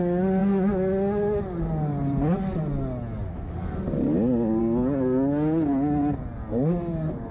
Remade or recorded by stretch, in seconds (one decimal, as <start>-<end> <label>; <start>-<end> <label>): 0.0-7.3 recorded

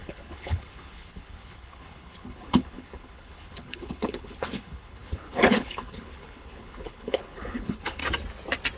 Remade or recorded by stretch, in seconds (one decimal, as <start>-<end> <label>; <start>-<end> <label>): 0.0-8.0 remade; 8.0-8.8 recorded

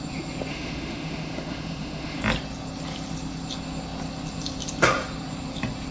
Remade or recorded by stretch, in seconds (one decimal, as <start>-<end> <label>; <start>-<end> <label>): 0.0-0.5 recorded; 0.5-2.2 remade; 2.2-5.9 recorded

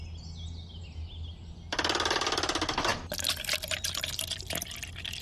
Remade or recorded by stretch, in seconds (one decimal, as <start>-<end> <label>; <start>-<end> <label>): 0.0-5.2 recorded